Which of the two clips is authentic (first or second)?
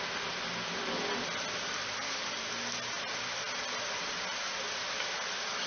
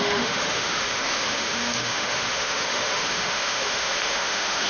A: first